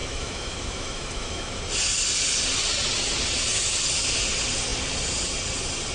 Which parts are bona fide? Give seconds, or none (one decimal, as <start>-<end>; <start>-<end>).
1.6-5.9